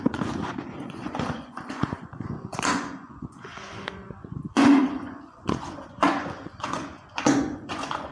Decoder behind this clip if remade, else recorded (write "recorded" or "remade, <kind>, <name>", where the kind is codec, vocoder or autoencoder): remade, vocoder, Vocos